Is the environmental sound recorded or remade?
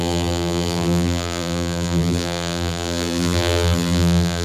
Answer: remade